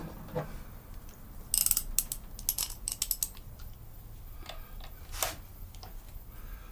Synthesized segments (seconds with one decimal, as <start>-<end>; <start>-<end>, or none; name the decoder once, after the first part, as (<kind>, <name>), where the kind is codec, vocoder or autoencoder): none

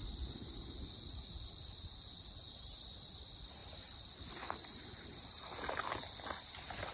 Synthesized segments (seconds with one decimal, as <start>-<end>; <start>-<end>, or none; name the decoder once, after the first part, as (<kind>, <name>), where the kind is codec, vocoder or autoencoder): none

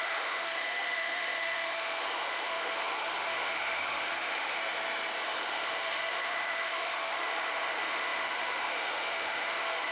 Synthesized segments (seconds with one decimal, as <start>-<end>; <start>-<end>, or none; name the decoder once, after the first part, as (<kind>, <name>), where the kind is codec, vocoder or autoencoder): 0.0-4.6 (autoencoder, DAC-VAE); 5.4-9.9

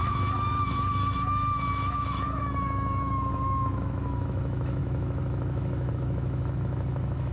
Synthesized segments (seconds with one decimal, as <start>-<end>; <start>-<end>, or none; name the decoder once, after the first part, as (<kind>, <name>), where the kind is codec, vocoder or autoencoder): 0.0-7.3 (autoencoder, DAC-VAE)